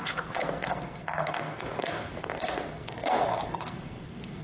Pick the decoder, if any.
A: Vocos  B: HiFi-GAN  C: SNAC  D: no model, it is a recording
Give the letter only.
C